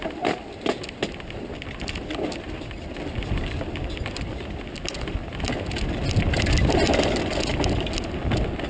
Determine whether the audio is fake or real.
real